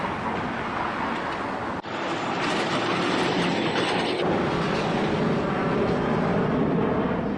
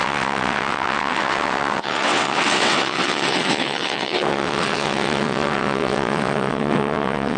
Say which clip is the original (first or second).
first